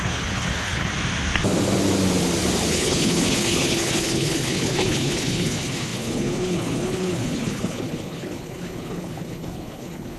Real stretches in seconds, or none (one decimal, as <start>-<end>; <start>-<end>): 0.9-2.7